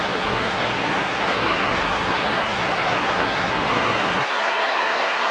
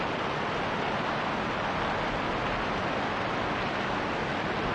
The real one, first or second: second